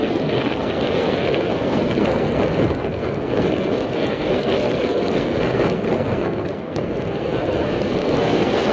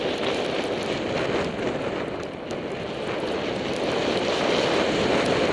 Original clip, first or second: second